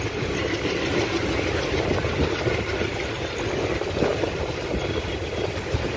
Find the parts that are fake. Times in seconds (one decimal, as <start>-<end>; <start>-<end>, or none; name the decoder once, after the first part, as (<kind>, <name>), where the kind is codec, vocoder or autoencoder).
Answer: none